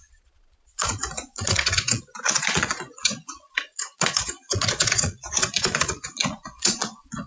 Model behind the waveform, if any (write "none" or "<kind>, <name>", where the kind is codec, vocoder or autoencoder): vocoder, Vocos